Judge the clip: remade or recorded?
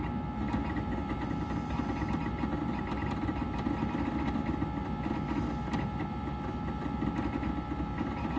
recorded